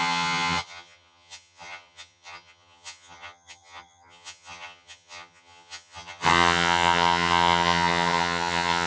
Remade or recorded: remade